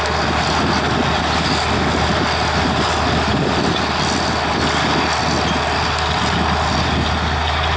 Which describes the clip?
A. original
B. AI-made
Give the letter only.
A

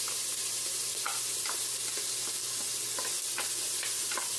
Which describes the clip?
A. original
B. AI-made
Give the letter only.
A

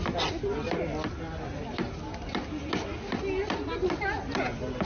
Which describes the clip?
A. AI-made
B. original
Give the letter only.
B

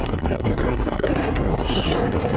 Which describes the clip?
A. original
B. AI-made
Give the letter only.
B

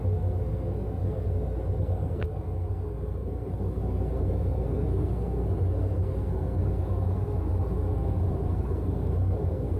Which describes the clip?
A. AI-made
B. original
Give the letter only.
A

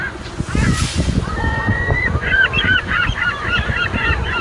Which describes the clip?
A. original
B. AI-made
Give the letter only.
B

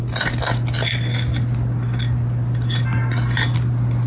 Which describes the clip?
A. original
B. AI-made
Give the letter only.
A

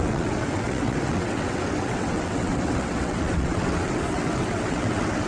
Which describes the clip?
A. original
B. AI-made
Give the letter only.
B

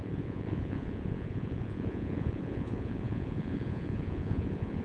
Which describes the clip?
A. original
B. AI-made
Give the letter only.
B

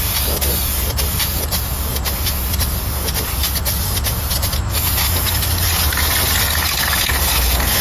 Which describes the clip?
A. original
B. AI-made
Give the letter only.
A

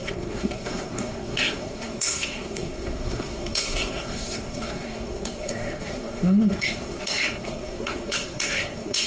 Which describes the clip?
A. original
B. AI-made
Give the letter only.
B